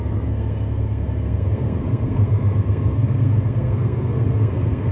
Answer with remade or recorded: remade